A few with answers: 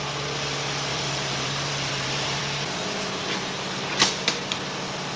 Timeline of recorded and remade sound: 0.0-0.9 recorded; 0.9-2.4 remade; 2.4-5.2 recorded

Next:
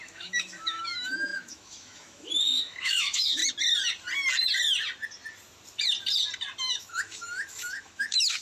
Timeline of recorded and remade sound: 0.0-3.4 remade; 3.4-6.7 recorded; 6.7-8.4 remade

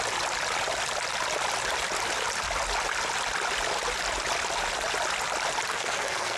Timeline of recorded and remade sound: 0.0-5.7 recorded; 5.7-6.4 remade